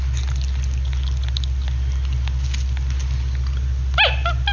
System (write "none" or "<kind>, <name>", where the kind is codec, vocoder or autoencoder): none